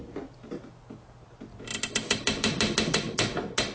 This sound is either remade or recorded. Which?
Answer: recorded